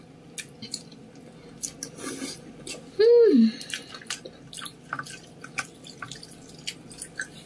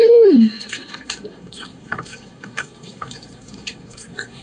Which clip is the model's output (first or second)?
second